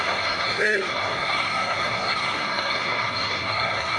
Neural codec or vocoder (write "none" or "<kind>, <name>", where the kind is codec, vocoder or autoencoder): codec, SNAC